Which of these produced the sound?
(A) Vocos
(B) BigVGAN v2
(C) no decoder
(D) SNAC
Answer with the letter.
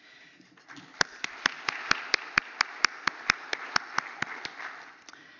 C